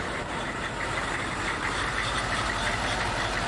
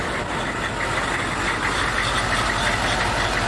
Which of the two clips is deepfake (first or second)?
first